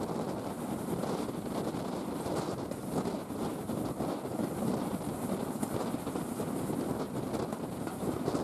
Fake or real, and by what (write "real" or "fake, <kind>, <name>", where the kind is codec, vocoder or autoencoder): real